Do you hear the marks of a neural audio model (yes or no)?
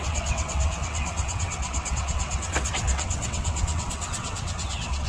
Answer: yes